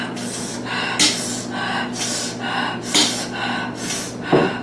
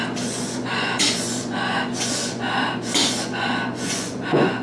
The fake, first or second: second